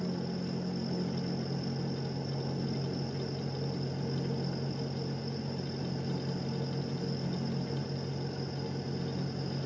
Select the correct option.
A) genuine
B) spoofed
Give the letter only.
A